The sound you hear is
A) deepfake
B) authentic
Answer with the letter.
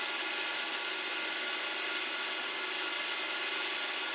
B